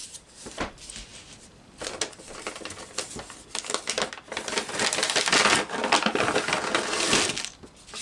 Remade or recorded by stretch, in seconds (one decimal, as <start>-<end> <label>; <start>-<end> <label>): 0.0-0.7 remade; 0.7-8.0 recorded